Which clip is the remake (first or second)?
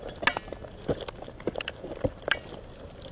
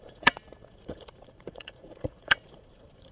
second